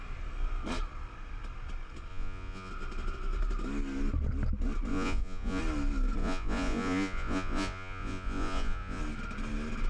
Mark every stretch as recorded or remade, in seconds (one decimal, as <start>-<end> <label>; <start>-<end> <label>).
0.0-2.1 recorded; 2.1-2.7 remade; 2.7-4.9 recorded; 4.9-5.6 remade; 5.6-6.2 recorded; 6.2-9.0 remade; 9.0-9.9 recorded